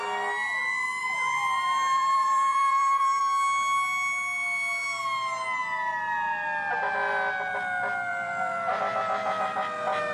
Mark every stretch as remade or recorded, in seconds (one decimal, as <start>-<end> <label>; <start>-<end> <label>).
0.0-1.0 recorded; 1.0-3.2 remade; 3.2-8.1 recorded; 8.1-8.8 remade; 8.8-10.1 recorded